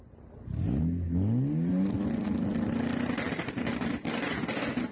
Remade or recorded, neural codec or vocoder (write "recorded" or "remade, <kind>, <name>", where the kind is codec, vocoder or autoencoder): recorded